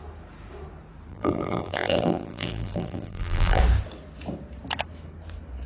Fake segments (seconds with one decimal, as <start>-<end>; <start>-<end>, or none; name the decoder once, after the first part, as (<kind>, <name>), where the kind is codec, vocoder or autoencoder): 1.1-3.6 (vocoder, BigVGAN v2)